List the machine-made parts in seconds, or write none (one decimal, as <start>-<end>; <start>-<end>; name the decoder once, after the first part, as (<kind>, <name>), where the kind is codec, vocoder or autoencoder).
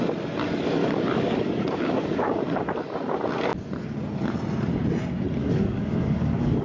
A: 0.8-2.6 (codec, DAC); 5.4-6.6